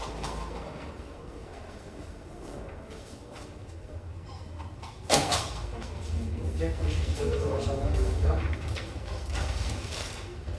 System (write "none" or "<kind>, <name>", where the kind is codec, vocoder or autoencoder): codec, SNAC